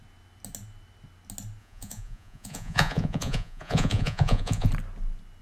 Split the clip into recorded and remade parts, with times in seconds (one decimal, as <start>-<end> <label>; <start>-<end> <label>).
0.0-1.6 recorded; 1.6-4.7 remade; 4.7-5.4 recorded